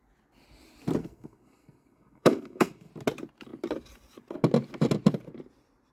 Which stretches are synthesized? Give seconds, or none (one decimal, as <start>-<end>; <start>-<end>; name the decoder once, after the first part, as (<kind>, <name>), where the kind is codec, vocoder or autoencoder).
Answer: 1.0-2.9 (codec, SNAC)